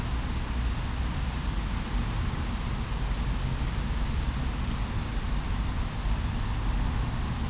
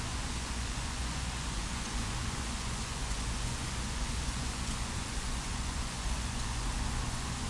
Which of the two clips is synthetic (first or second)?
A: second